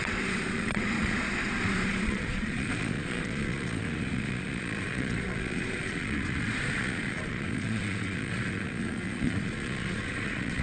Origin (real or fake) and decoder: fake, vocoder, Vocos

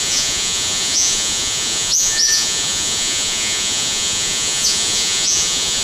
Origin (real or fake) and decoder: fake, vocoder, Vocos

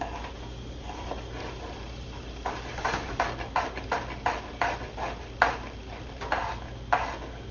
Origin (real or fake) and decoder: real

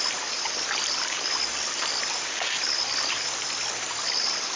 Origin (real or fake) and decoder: real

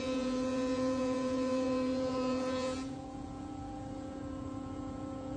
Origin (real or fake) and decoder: fake, vocoder, Vocos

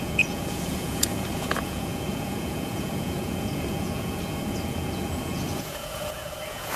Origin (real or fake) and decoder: fake, vocoder, Vocos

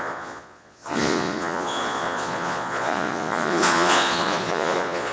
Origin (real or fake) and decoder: fake, vocoder, Vocos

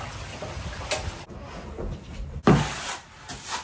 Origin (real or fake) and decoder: real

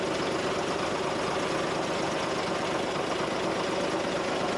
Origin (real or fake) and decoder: real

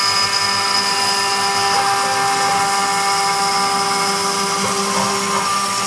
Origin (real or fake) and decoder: real